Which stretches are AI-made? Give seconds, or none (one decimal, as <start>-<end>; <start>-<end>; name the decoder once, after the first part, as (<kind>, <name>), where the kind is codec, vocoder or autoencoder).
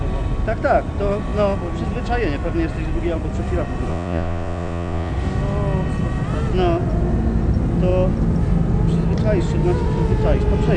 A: 3.9-5.1 (vocoder, Vocos)